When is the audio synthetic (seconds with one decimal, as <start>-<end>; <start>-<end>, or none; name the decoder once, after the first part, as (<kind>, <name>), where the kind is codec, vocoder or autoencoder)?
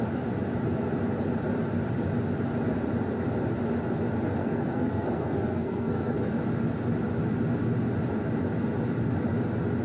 4.4-6.3 (codec, SNAC)